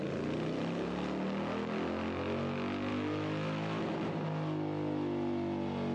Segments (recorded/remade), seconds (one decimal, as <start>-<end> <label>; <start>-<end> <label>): 0.0-2.9 recorded; 2.9-3.8 remade; 3.8-5.9 recorded